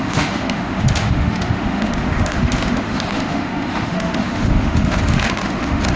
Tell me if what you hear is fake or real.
fake